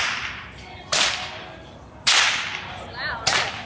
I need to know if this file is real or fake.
real